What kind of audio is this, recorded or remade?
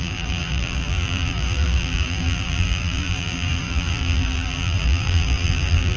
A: remade